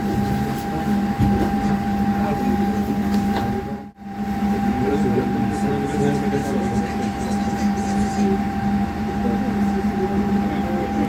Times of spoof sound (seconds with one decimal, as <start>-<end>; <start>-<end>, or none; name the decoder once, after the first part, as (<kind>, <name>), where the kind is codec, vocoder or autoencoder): 6.4-6.9 (autoencoder, DAC-VAE)